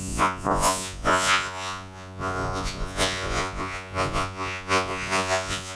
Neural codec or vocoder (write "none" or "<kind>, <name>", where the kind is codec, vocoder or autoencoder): vocoder, Vocos